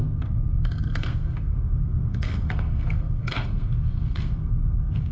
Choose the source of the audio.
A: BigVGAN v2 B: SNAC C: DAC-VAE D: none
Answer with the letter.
B